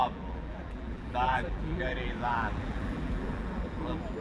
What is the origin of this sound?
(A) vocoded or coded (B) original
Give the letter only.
A